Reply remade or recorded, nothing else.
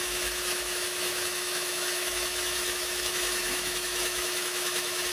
remade